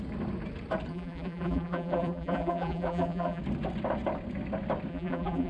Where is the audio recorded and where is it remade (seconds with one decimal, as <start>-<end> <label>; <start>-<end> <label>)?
0.0-0.9 recorded; 0.9-3.4 remade; 3.4-4.9 recorded; 4.9-5.5 remade